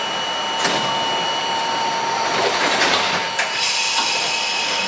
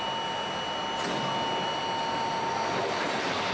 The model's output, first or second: first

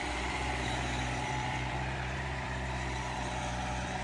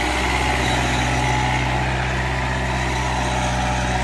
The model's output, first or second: first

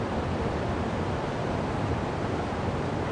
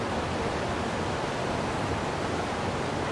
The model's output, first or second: first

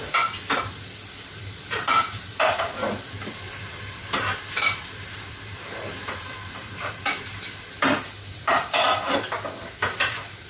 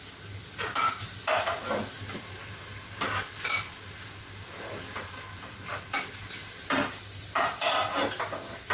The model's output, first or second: first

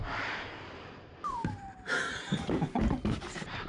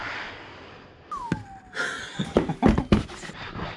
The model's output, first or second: first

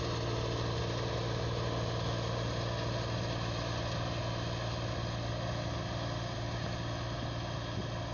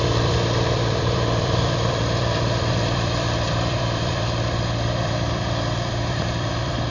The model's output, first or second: second